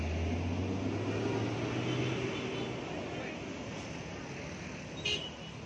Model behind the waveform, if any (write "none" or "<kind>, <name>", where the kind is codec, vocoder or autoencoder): none